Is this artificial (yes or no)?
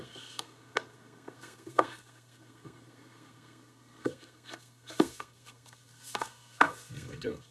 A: yes